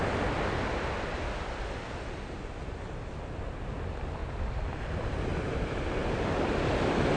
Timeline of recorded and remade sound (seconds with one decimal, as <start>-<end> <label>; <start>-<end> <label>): 0.0-4.2 recorded; 4.2-4.8 remade; 4.8-5.3 recorded; 5.3-6.6 remade; 6.6-7.2 recorded